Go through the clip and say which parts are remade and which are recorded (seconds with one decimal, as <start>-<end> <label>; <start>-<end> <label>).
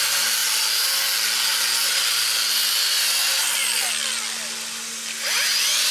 0.0-5.9 recorded